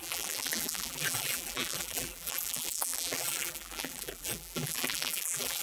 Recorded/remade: remade